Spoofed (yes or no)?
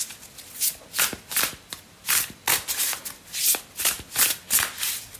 no